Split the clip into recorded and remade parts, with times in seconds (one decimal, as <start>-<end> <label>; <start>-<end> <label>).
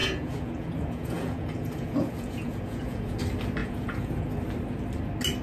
0.0-3.2 remade; 3.2-3.6 recorded; 3.6-4.3 remade; 4.3-5.4 recorded